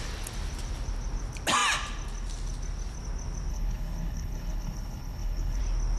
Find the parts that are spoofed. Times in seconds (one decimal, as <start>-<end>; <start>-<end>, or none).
3.5-5.6